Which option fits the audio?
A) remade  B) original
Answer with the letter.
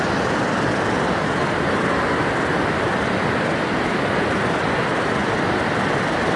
B